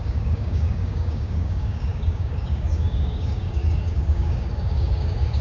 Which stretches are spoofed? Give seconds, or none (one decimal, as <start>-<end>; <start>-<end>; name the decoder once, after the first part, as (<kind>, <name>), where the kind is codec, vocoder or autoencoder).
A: 0.0-5.4 (codec, DAC)